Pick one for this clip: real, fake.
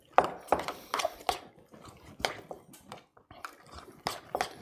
real